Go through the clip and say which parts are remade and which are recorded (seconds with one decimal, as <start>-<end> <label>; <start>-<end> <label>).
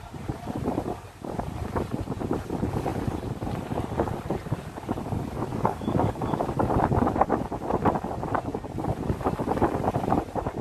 0.0-5.5 recorded; 5.5-6.5 remade; 6.5-10.6 recorded